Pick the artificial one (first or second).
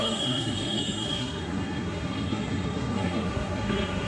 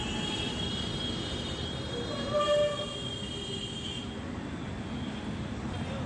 first